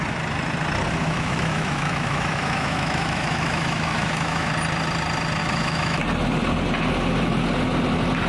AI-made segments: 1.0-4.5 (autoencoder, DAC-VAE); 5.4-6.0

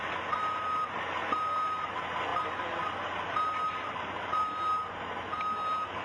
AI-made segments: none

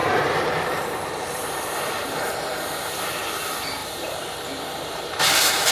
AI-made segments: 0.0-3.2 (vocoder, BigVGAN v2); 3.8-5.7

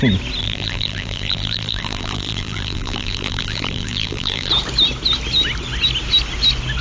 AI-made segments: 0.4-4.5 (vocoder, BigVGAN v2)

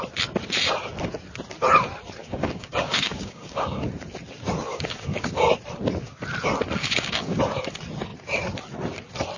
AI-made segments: 2.2-3.8 (codec, DAC); 4.7-5.5; 6.8-7.4

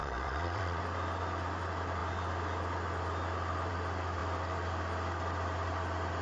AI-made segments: 0.0-0.8 (vocoder, Vocos)

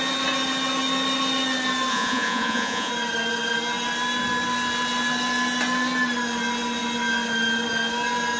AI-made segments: 1.9-2.9 (vocoder, Vocos)

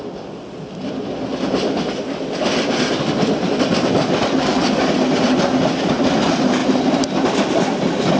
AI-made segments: none